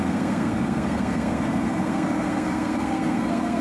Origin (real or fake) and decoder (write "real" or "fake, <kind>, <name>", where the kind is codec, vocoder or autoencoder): fake, codec, SNAC